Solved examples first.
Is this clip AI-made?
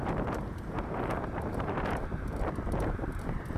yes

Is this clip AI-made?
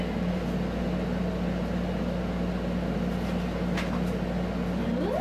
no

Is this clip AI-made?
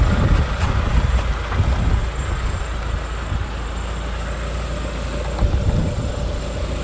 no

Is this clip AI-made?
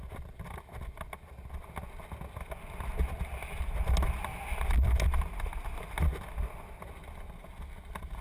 no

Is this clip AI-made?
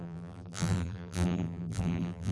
yes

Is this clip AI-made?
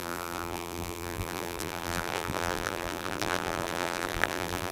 yes